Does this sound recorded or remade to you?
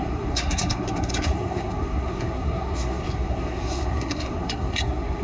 remade